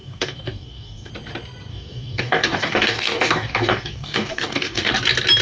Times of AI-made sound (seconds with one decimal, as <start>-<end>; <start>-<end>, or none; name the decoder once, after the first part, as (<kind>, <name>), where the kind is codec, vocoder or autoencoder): 0.0-1.1 (codec, DAC); 1.7-4.9